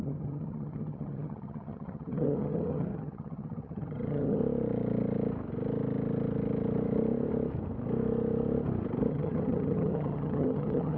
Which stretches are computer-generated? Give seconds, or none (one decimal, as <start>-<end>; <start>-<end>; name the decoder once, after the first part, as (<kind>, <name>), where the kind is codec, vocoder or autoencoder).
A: 0.0-4.4 (vocoder, HiFi-GAN); 9.1-11.0